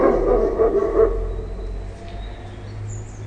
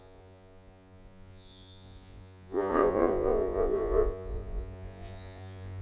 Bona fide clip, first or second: first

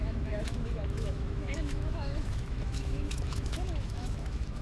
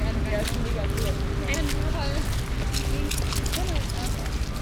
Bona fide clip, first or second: second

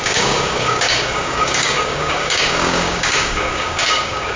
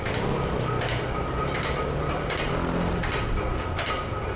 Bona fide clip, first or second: second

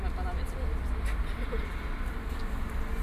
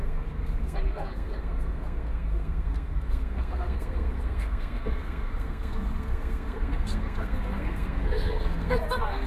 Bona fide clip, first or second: first